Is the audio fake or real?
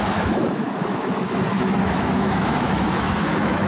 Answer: fake